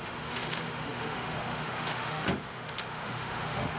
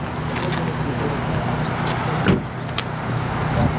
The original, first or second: second